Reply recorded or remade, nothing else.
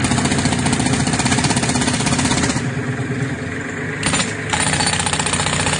recorded